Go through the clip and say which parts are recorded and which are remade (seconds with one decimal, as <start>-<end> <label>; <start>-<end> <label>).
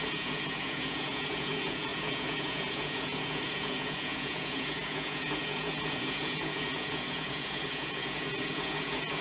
0.0-9.2 remade